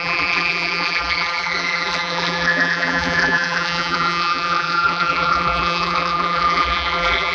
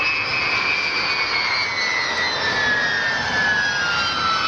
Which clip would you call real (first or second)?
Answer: second